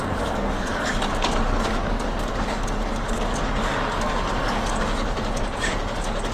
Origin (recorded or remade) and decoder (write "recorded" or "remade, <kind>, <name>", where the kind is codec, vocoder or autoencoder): remade, codec, DAC